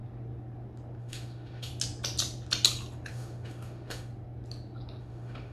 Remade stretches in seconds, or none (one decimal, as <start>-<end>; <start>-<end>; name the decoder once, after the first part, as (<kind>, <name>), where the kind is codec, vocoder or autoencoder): 1.0-1.7 (autoencoder, DAC-VAE); 3.1-4.1; 5.0-5.5